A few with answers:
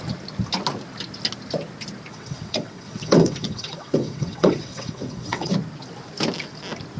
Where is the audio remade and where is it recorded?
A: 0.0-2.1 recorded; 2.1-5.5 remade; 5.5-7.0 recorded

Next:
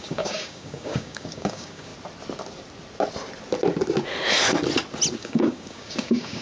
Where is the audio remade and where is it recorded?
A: 0.0-1.9 remade; 1.9-5.2 recorded; 5.2-6.4 remade

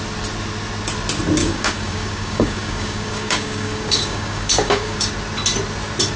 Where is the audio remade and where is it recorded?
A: 0.0-1.4 recorded; 1.4-5.1 remade; 5.1-6.2 recorded

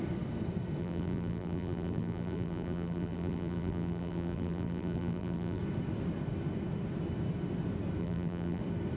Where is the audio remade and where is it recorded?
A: 0.0-0.8 recorded; 0.8-5.6 remade; 5.6-8.0 recorded; 8.0-8.6 remade; 8.6-9.0 recorded

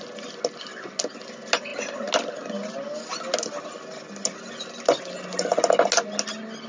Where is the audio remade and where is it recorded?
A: 0.0-6.7 recorded

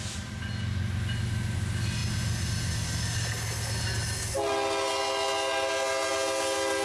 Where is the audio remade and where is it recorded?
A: 0.0-6.8 recorded

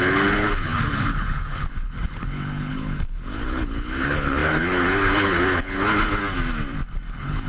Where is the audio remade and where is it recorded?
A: 0.0-6.2 remade; 6.2-7.1 recorded; 7.1-7.5 remade

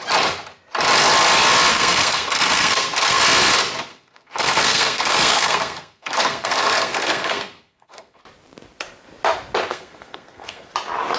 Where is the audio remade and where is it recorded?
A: 0.0-1.7 recorded; 1.7-3.2 remade; 3.2-3.9 recorded; 3.9-8.2 remade; 8.2-9.7 recorded; 9.7-10.7 remade; 10.7-11.2 recorded